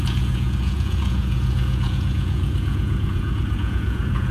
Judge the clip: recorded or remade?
remade